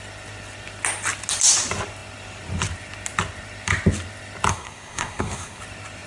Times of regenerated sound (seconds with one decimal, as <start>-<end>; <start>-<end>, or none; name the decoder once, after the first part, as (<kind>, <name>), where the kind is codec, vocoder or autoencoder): 4.5-5.6 (codec, SNAC)